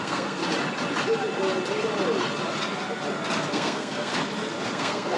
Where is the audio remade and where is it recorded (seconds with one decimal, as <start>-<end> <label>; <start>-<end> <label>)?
0.0-0.4 remade; 0.4-3.5 recorded; 3.5-4.1 remade; 4.1-4.7 recorded; 4.7-5.2 remade